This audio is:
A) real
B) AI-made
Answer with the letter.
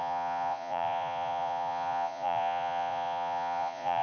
B